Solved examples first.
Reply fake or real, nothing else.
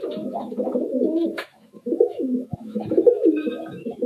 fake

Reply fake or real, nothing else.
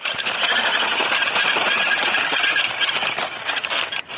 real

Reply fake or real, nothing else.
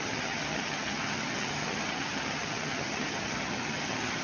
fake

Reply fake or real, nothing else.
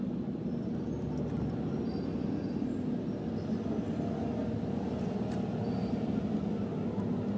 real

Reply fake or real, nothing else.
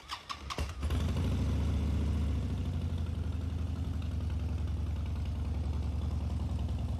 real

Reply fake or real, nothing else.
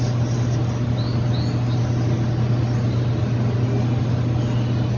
real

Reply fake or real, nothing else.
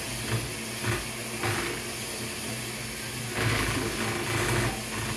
real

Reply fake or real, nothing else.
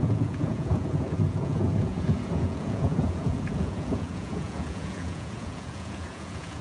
fake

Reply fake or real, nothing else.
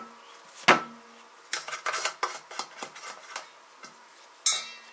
real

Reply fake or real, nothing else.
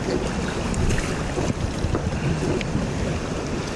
real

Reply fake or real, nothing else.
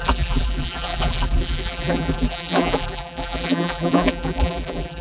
fake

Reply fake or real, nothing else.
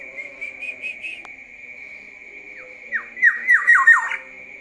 real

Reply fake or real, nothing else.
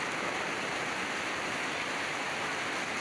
real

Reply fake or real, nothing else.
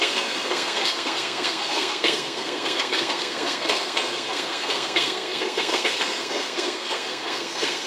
fake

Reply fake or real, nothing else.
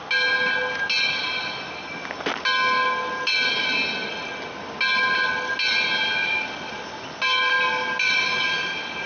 real